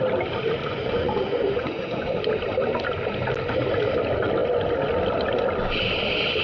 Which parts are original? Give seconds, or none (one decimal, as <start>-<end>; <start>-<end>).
0.0-0.6; 2.1-6.4